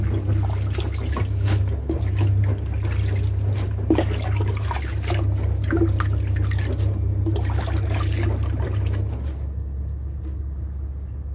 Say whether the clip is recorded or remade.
recorded